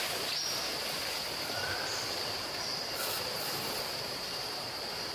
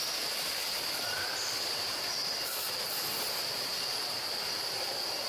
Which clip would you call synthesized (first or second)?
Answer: first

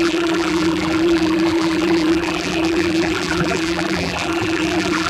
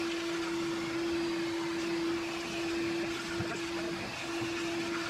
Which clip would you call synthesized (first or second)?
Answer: first